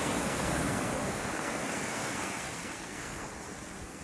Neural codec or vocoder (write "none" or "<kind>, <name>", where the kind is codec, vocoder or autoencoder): codec, SNAC